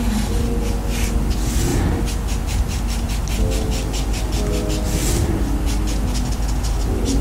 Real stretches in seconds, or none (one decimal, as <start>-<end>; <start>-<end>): 0.0-7.2